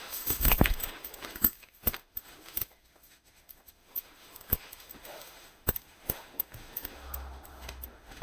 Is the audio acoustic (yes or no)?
no